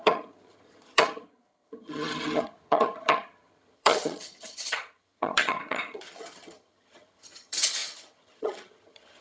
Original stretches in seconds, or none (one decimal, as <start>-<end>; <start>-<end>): none